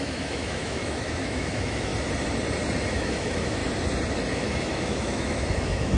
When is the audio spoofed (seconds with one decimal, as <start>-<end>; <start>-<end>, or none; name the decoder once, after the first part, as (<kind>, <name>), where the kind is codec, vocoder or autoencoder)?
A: 0.0-1.9 (autoencoder, DAC-VAE); 2.8-3.6; 4.3-6.0